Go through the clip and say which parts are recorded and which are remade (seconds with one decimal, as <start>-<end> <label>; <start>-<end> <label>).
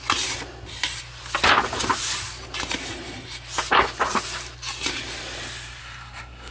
0.0-5.8 recorded; 5.8-6.5 remade